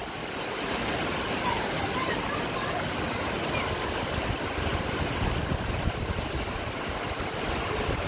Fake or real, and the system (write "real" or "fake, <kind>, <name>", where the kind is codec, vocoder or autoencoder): real